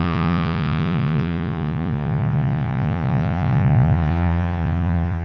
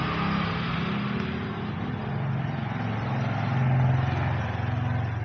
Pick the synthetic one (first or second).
first